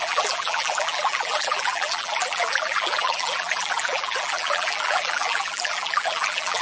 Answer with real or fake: fake